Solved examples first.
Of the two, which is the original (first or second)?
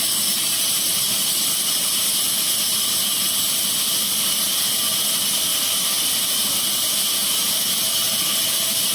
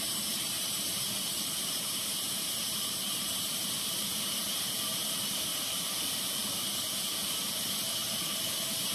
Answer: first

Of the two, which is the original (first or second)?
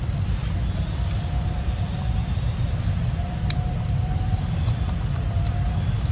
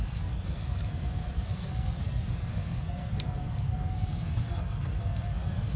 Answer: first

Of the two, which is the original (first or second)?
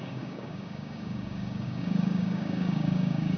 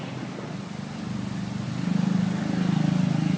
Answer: second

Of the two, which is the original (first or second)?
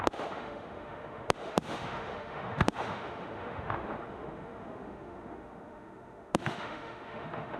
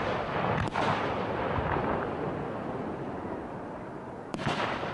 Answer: second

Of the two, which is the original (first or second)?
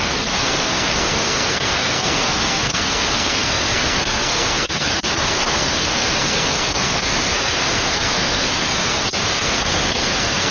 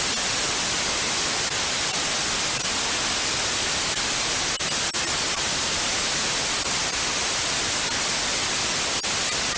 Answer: second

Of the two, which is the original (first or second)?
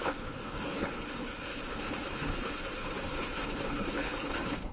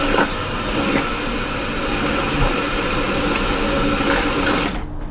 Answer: second